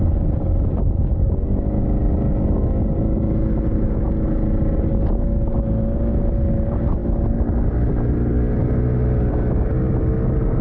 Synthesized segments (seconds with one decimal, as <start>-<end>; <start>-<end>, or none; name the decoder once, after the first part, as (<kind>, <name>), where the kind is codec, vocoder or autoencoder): none